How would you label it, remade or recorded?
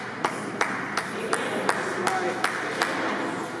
recorded